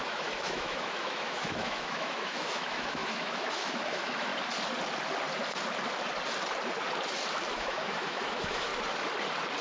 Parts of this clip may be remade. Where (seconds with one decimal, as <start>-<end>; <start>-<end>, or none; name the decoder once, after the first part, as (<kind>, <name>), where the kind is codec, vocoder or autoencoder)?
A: 0.0-4.3 (autoencoder, DAC-VAE); 7.5-8.7